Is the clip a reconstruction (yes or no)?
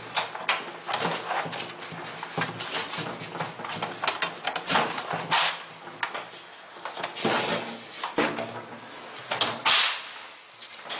no